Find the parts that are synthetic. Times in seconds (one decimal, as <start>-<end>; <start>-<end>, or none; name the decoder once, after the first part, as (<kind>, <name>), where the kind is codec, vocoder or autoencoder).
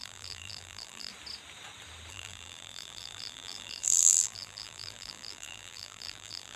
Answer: 0.0-1.1 (vocoder, BigVGAN v2); 2.1-6.6